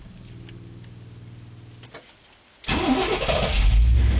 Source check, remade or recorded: recorded